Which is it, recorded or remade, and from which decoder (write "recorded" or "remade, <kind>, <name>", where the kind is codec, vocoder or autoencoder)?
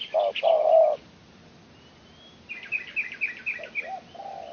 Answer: recorded